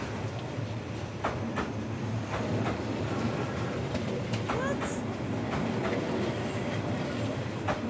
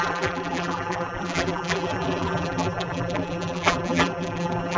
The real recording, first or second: first